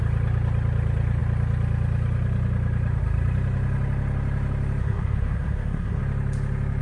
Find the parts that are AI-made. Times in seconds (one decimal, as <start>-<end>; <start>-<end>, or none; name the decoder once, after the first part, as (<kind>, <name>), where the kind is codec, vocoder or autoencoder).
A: 4.8-6.0 (codec, SNAC)